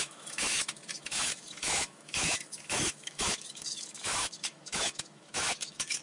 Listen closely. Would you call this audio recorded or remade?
remade